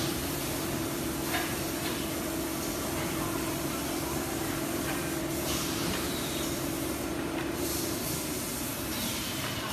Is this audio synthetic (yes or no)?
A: no